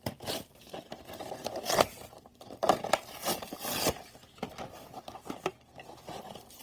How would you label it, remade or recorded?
recorded